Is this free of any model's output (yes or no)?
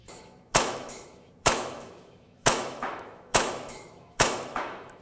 no